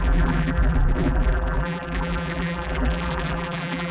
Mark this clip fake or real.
fake